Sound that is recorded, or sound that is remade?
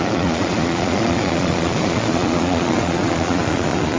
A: remade